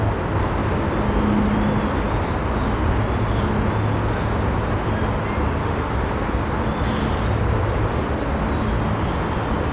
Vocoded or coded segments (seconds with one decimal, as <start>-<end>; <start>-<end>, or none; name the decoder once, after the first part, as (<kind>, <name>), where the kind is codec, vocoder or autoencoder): 5.6-6.1 (autoencoder, DAC-VAE)